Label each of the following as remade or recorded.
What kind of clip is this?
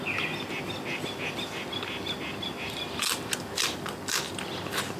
recorded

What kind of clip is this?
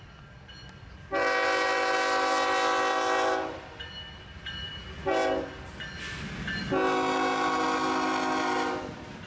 recorded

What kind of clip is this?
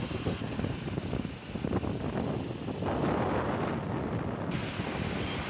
recorded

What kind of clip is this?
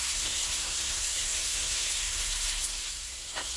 remade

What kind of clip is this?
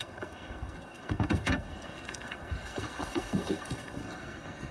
remade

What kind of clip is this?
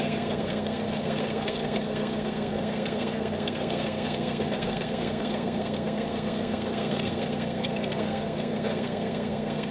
remade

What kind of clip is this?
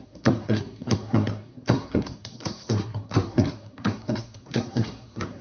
remade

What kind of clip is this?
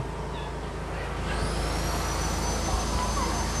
recorded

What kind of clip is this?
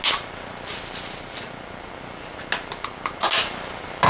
recorded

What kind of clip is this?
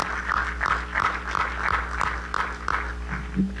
recorded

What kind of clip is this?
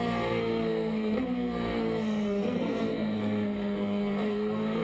remade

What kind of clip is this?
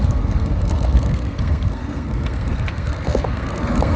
remade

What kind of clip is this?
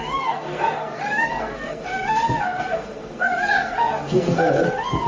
remade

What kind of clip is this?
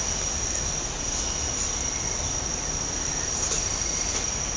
recorded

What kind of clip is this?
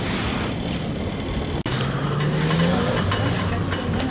recorded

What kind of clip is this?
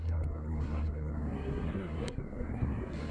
remade